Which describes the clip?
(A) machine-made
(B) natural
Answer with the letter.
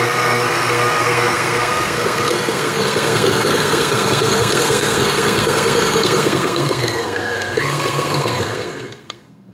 A